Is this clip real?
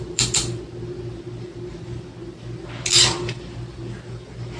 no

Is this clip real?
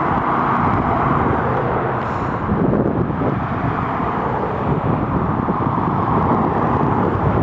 no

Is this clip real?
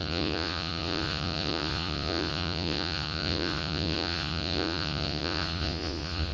no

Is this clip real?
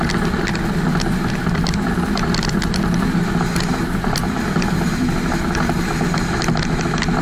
yes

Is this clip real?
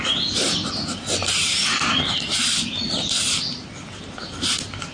yes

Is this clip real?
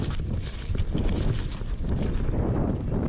yes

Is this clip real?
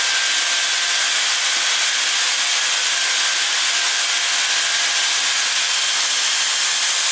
yes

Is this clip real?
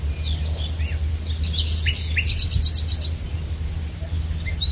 yes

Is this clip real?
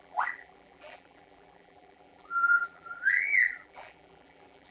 no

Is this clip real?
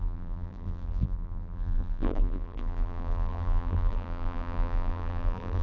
no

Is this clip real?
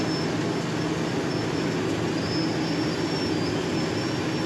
yes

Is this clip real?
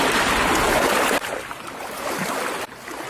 yes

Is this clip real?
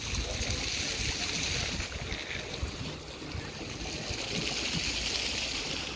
yes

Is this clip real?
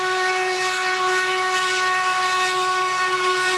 yes